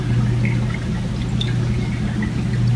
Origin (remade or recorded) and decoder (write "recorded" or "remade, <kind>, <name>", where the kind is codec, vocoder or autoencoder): recorded